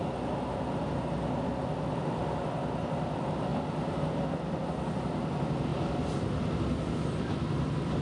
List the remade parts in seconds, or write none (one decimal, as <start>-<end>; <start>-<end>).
none